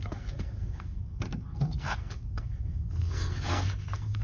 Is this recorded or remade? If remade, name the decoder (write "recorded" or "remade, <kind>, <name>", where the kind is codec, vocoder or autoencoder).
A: remade, codec, SNAC